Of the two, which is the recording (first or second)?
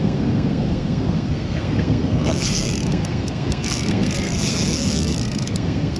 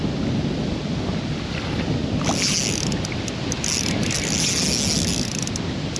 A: second